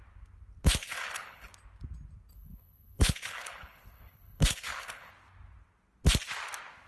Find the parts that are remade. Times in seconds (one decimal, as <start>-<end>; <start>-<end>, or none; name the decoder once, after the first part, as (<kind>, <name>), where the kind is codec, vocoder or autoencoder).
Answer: 0.8-1.5 (codec, HILCodec); 2.3-5.1